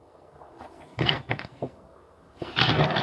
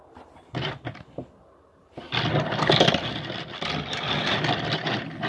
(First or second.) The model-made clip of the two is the first